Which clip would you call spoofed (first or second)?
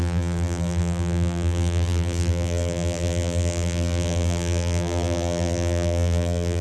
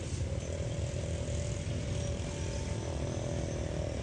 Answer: first